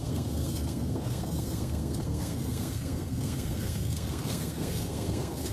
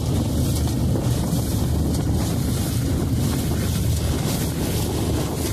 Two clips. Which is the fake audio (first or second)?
first